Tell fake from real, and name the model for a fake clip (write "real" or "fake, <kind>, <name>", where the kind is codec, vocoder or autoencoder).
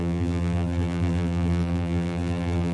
fake, vocoder, BigVGAN v2